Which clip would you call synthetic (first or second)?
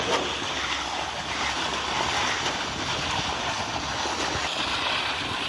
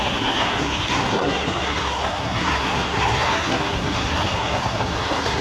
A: second